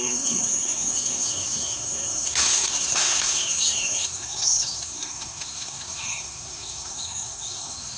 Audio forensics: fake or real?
fake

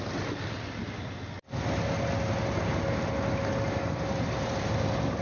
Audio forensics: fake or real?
real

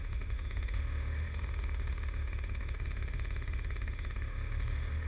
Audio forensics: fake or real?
fake